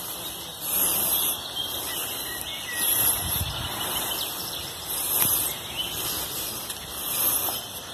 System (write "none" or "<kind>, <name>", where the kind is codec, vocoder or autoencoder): none